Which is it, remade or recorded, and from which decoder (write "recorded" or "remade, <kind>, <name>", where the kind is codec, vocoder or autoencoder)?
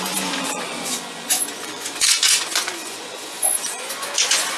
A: remade, vocoder, Vocos